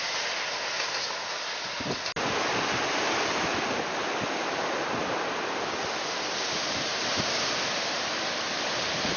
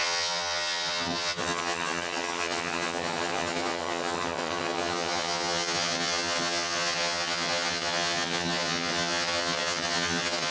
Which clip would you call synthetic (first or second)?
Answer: second